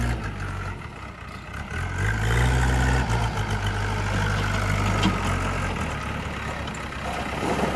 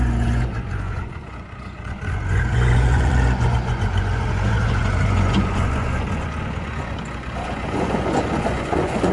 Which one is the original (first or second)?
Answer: first